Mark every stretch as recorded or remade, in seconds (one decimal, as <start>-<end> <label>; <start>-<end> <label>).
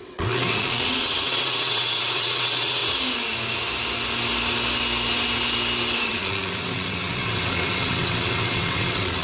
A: 0.0-2.8 remade; 2.8-6.0 recorded; 6.0-9.2 remade